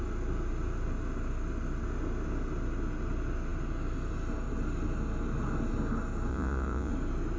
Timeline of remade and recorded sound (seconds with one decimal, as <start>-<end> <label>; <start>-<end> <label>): 0.0-6.3 recorded; 6.3-6.9 remade; 6.9-7.4 recorded